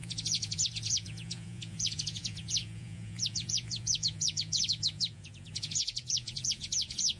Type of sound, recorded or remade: remade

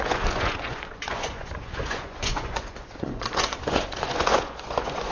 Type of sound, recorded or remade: remade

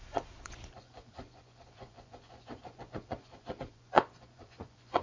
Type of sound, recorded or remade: remade